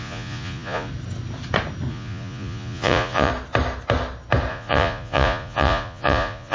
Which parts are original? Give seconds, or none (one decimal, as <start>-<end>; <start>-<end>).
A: 0.9-1.9; 3.3-4.5